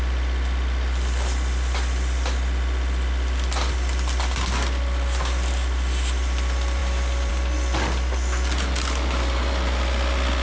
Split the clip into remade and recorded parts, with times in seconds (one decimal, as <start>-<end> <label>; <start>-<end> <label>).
0.0-10.4 recorded